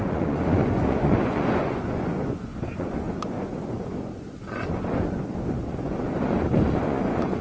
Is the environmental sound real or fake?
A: fake